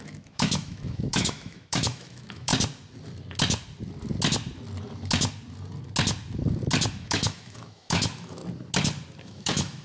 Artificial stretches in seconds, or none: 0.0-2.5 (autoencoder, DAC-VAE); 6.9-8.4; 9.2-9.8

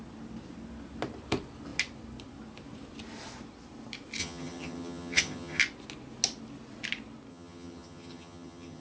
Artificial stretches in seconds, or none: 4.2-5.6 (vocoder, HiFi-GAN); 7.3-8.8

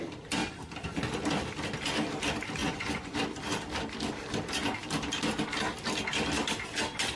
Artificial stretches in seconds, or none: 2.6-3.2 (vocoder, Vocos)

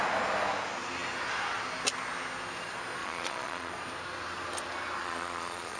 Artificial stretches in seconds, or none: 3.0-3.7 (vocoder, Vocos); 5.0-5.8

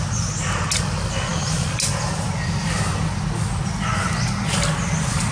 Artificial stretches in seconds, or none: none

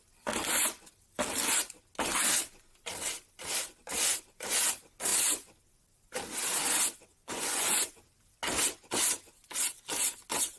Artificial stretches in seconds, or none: 7.1-7.9 (vocoder, Vocos)

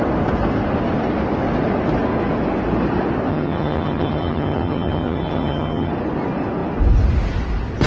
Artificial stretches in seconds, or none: 3.3-5.9 (vocoder, HiFi-GAN)